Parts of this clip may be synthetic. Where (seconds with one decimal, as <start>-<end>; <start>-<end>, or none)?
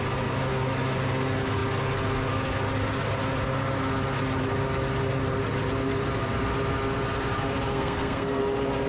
7.7-8.4